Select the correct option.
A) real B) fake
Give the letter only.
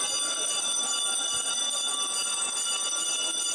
A